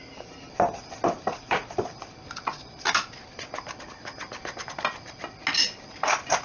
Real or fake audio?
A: real